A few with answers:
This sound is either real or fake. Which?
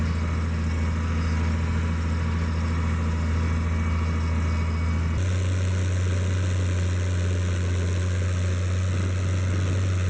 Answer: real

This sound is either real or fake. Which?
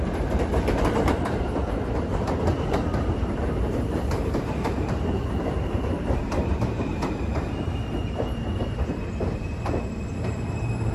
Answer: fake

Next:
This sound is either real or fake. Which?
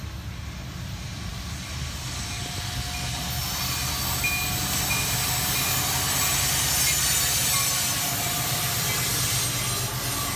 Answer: real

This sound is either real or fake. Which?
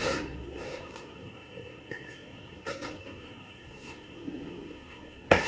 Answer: fake